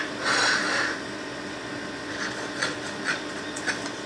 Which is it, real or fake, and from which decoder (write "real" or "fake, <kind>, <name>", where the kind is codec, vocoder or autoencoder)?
fake, vocoder, Vocos